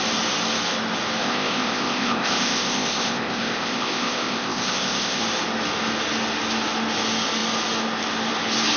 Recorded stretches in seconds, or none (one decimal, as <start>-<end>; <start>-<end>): 0.0-1.2; 5.2-8.8